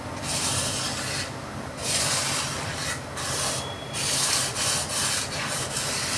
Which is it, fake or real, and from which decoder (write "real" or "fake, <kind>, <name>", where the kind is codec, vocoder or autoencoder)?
real